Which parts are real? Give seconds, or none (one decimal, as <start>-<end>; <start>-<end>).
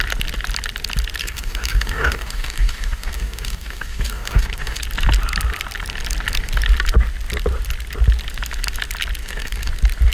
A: 0.0-1.2; 4.8-9.2; 9.7-10.1